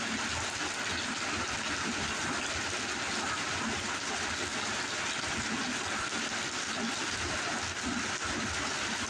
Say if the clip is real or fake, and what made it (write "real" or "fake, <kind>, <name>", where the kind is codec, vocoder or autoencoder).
real